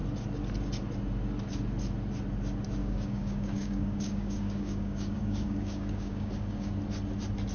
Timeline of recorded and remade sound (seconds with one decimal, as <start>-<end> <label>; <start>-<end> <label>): 0.0-2.8 recorded; 2.8-6.7 remade; 6.7-7.5 recorded